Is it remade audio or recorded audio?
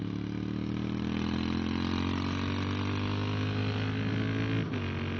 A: recorded